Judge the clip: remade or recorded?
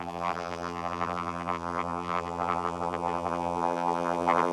remade